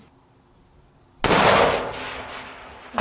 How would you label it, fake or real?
real